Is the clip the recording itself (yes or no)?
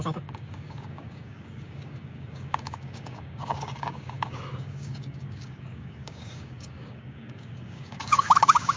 no